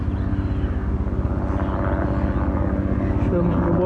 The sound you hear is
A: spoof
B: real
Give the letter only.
B